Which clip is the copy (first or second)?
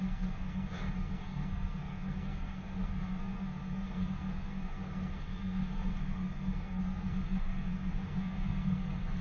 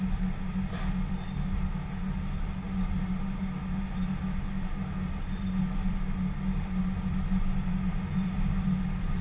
first